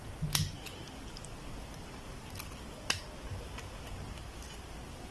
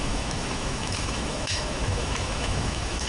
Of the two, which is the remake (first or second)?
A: second